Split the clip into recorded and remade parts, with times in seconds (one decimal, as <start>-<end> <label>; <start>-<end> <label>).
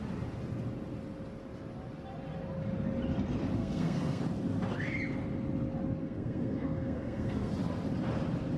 0.0-3.6 recorded; 3.6-4.2 remade; 4.2-6.0 recorded; 6.0-7.5 remade; 7.5-8.6 recorded